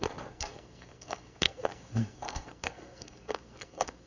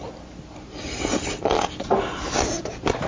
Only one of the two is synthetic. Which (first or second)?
first